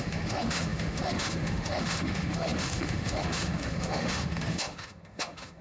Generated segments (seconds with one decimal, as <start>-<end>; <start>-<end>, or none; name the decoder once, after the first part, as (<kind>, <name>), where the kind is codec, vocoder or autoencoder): 0.0-5.6 (autoencoder, DAC-VAE)